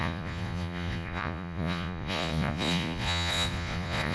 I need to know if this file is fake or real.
fake